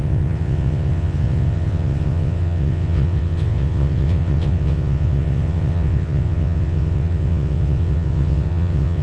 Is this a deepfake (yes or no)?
yes